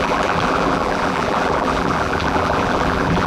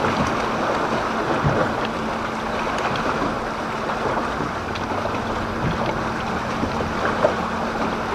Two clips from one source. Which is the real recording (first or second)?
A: second